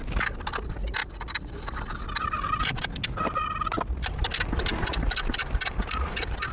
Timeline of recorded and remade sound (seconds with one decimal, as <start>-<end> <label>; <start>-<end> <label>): 0.0-6.5 recorded